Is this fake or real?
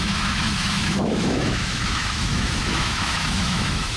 fake